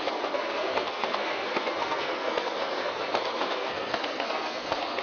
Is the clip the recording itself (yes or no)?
no